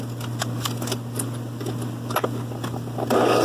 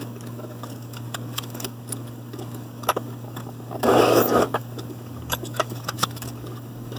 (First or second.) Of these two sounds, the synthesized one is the second